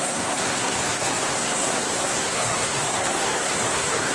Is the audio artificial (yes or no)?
yes